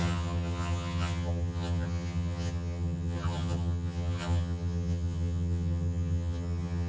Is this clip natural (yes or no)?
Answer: no